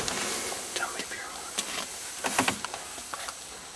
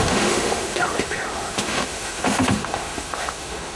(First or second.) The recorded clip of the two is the first